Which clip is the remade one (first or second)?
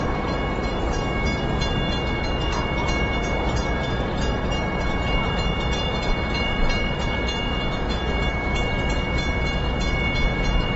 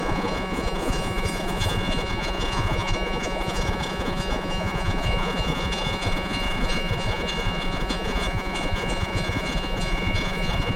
second